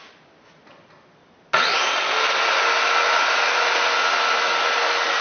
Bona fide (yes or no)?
yes